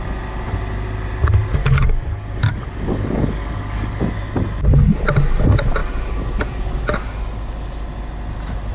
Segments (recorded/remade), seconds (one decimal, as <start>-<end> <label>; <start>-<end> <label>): 0.0-1.6 recorded; 1.6-4.0 remade; 4.0-8.7 recorded